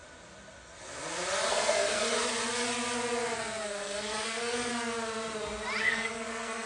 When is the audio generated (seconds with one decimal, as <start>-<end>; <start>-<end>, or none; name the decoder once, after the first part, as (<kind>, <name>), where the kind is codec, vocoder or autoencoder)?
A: 1.5-2.0 (codec, SNAC); 3.6-4.7; 5.8-6.7